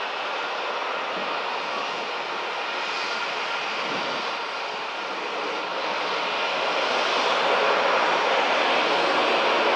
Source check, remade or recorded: recorded